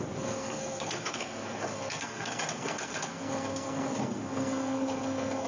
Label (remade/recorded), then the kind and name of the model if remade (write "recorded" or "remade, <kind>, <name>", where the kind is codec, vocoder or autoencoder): remade, codec, SNAC